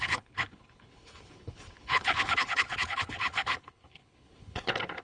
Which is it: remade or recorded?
remade